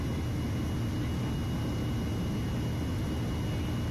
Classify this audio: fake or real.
real